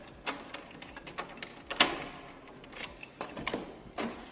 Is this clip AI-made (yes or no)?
no